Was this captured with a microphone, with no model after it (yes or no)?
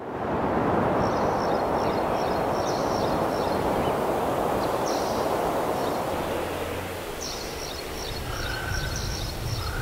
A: yes